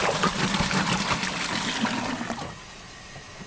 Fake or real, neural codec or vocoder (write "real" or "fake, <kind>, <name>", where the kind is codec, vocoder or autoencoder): real